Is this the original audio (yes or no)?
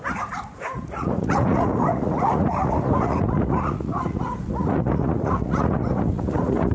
no